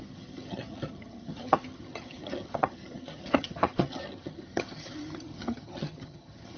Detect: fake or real fake